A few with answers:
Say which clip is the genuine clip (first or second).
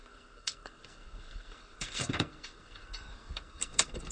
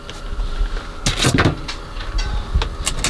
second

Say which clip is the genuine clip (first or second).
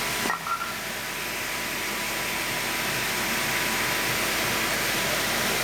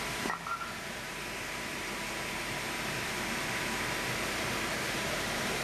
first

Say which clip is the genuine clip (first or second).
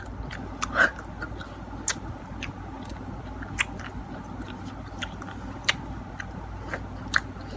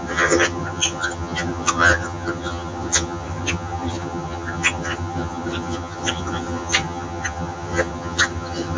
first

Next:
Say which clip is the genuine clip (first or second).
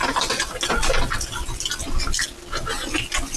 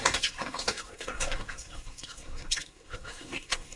first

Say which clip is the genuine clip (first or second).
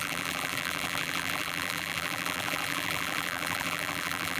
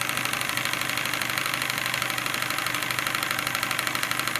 second